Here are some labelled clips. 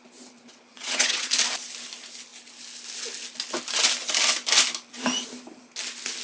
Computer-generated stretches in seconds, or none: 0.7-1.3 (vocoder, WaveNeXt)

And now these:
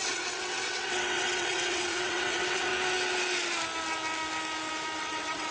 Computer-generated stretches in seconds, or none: 0.0-2.7 (vocoder, WaveNeXt); 5.0-5.5

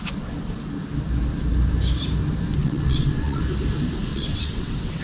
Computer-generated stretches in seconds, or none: 2.6-3.4 (vocoder, WaveNeXt); 4.1-5.0

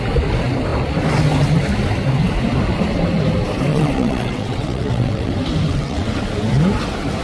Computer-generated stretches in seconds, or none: 3.7-5.3 (vocoder, WaveNeXt); 5.7-6.2

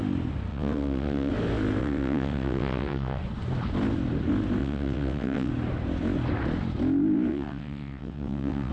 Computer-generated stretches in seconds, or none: 0.5-1.3 (vocoder, WaveNeXt); 1.8-3.2; 4.6-5.5; 7.3-8.7

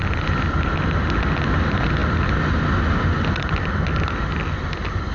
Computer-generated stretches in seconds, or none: none

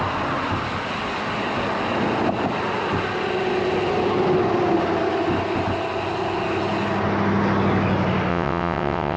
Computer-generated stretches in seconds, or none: 8.3-9.2 (vocoder, WaveNeXt)

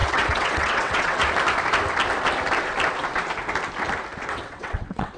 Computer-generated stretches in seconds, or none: 0.0-1.2 (vocoder, WaveNeXt); 4.3-5.2